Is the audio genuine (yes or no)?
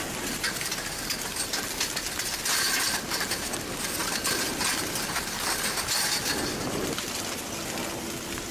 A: yes